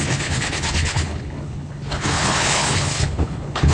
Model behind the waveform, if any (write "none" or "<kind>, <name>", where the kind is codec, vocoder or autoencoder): codec, HILCodec